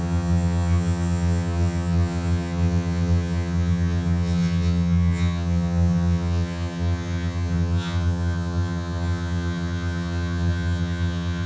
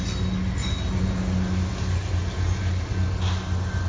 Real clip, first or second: second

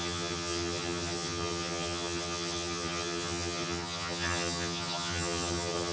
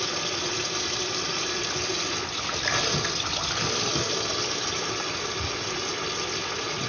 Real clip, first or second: second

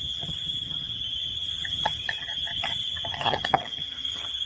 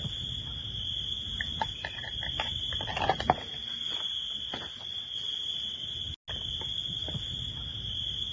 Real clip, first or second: second